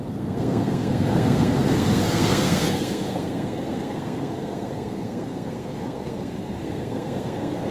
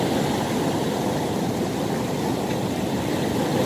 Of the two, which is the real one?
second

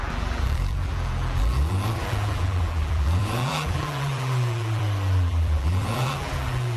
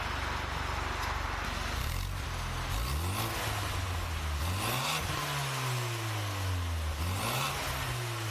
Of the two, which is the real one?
second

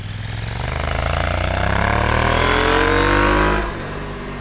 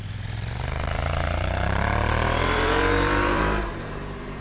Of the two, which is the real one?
first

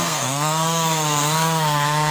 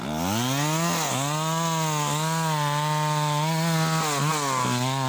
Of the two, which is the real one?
second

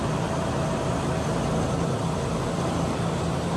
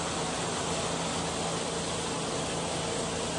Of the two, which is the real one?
second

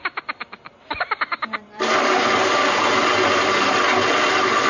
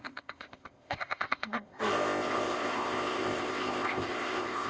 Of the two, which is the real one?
first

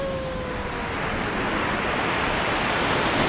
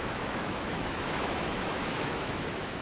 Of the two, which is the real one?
first